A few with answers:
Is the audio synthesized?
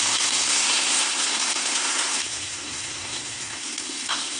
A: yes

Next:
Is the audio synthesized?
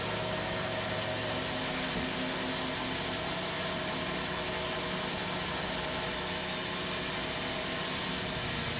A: no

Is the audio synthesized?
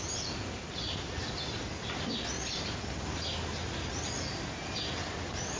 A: no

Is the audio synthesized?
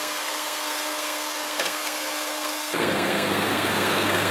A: yes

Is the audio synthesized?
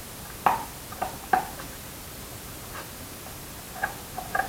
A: no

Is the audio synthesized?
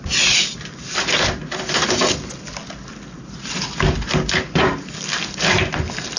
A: no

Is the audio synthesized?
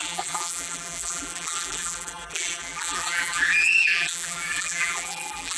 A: yes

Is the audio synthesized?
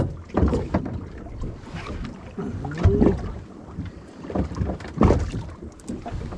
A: no